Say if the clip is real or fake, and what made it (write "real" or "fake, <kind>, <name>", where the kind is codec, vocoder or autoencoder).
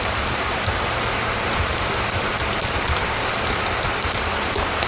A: fake, vocoder, BigVGAN v2